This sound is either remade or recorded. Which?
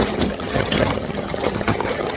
remade